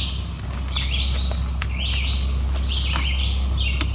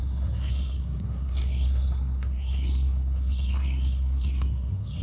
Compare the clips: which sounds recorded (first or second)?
first